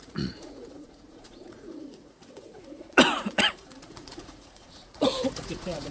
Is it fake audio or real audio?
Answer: fake